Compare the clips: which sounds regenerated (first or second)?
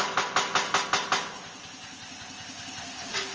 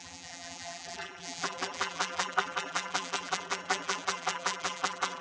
second